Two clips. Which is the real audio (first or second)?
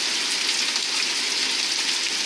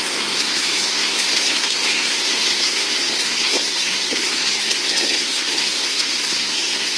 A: first